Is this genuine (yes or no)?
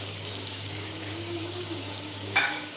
no